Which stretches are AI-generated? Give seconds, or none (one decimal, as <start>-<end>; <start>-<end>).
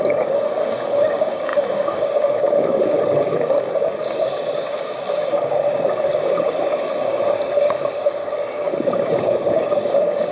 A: 0.0-10.3